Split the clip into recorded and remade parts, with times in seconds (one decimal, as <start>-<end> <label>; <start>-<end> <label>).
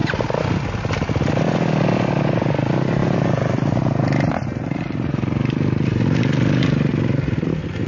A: 0.0-7.9 recorded